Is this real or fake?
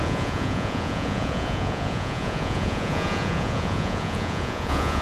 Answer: fake